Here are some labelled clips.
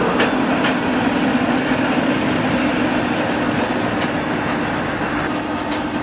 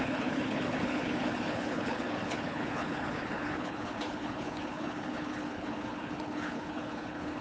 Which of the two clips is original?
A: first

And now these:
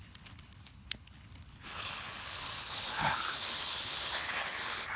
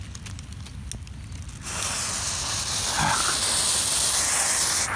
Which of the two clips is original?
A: second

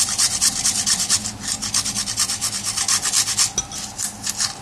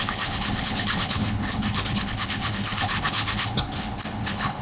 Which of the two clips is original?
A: first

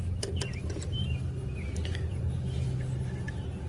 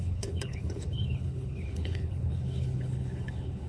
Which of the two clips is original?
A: first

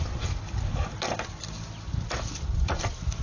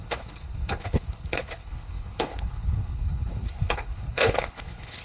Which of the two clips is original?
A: first